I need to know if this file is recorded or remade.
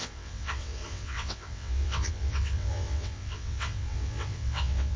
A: remade